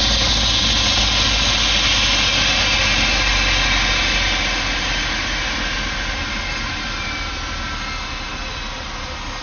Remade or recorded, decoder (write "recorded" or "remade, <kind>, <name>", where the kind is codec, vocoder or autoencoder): recorded